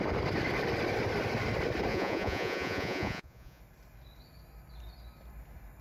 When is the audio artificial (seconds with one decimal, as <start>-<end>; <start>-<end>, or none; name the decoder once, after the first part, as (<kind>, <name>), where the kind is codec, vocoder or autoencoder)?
1.9-3.6 (vocoder, Vocos)